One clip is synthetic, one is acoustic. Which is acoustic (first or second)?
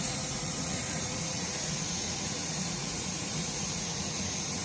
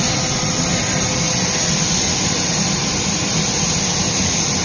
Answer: second